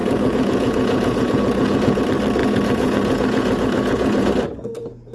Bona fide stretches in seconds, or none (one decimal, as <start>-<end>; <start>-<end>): 2.0-2.4; 4.3-5.1